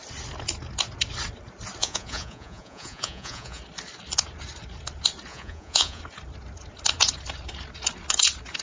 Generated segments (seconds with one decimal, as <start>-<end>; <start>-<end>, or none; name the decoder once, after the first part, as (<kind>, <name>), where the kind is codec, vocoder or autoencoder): 1.8-3.6 (vocoder, Vocos); 5.3-6.0